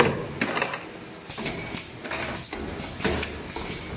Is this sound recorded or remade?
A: recorded